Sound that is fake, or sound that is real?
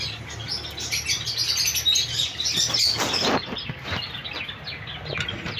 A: real